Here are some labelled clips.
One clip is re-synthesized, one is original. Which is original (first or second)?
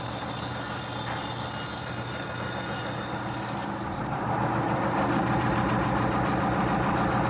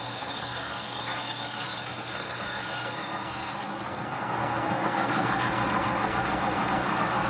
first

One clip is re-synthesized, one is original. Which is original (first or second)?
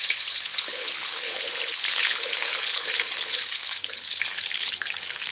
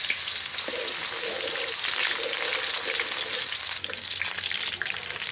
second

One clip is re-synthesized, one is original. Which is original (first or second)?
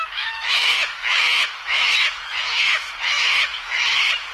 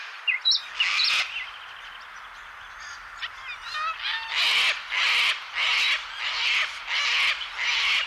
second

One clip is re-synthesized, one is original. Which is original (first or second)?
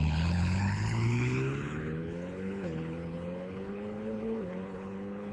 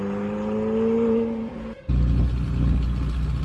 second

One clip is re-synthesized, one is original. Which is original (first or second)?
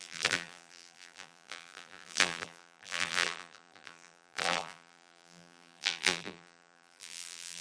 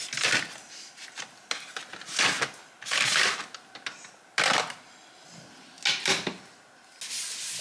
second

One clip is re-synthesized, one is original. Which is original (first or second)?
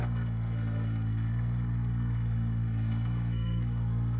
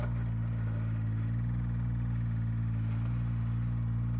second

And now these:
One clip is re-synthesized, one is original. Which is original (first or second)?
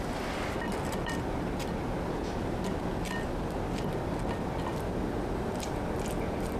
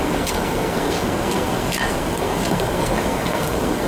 first